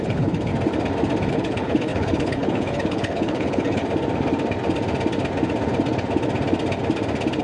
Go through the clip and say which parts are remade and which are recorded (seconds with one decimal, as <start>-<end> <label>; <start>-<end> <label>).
0.0-0.5 remade; 0.5-1.3 recorded; 1.3-3.8 remade; 3.8-7.4 recorded